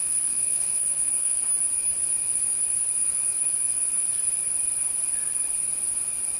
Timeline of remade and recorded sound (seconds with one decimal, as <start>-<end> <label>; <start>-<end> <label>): 0.0-1.4 remade; 1.4-6.4 recorded